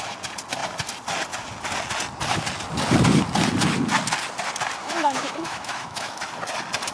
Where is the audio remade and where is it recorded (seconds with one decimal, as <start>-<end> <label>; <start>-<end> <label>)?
0.0-4.8 recorded; 4.8-6.2 remade; 6.2-6.9 recorded

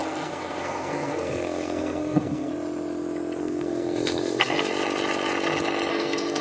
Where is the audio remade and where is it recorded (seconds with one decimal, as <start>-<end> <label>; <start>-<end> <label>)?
0.0-2.5 remade; 2.5-3.4 recorded; 3.4-4.7 remade; 4.7-5.9 recorded; 5.9-6.4 remade

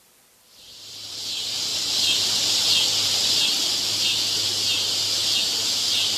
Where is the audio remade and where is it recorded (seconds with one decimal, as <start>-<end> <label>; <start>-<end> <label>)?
0.0-1.7 remade; 1.7-5.4 recorded; 5.4-6.2 remade

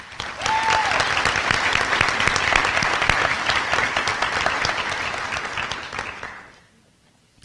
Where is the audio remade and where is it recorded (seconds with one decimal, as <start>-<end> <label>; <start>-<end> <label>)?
0.0-7.4 recorded

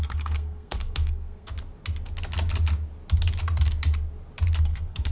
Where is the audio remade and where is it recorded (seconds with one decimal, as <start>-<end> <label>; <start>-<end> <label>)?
0.0-1.5 remade; 1.5-4.6 recorded; 4.6-5.1 remade

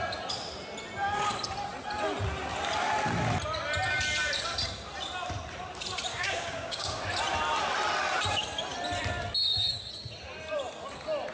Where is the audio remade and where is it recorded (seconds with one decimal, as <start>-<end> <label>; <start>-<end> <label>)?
0.0-6.1 recorded; 6.1-7.0 remade; 7.0-9.4 recorded; 9.4-9.9 remade; 9.9-11.3 recorded

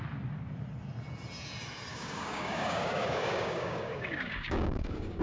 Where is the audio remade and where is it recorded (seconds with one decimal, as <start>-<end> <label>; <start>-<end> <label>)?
0.0-1.9 recorded; 1.9-5.2 remade

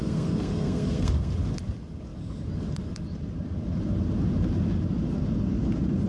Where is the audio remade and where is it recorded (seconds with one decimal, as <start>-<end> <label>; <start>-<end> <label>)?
0.0-1.3 remade; 1.3-6.1 recorded